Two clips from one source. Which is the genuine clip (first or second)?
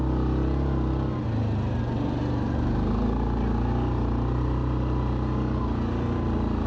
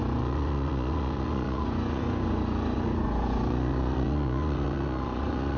first